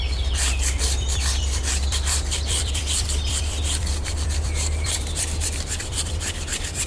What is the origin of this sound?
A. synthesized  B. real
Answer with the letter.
A